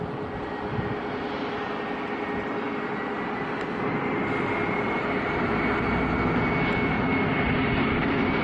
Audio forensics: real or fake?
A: real